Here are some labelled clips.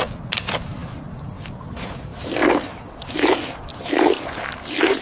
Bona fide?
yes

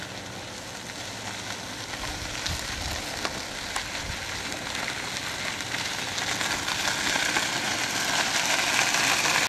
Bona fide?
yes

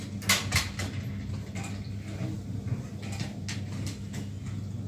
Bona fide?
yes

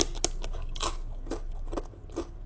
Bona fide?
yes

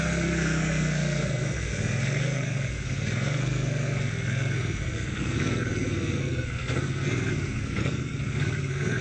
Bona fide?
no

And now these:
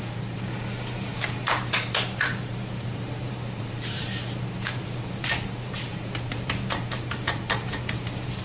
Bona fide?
no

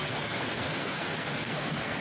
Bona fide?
no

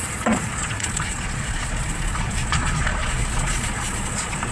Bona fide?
no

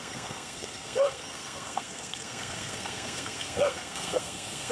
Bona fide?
no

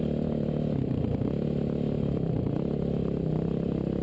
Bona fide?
yes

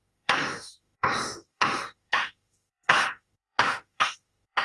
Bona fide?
no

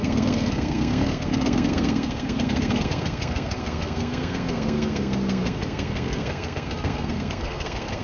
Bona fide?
no